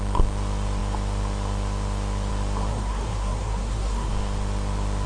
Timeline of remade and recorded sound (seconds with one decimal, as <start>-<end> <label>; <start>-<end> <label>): 0.0-2.7 recorded; 2.7-4.1 remade; 4.1-5.1 recorded